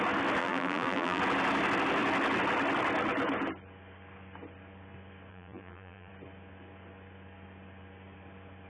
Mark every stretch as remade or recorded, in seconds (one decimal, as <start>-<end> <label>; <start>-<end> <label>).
0.0-0.4 recorded; 0.4-1.2 remade; 1.2-5.3 recorded; 5.3-6.1 remade; 6.1-8.7 recorded